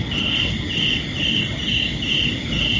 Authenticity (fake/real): real